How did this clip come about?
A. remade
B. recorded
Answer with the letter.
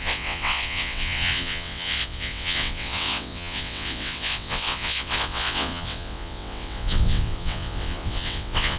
A